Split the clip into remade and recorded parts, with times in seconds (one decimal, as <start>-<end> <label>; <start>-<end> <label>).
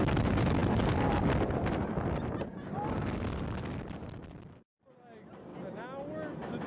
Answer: 0.0-6.7 recorded